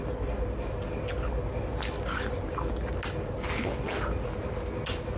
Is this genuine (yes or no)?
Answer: yes